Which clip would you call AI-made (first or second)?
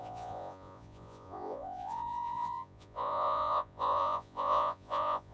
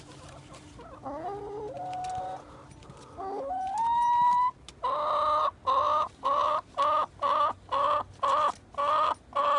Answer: first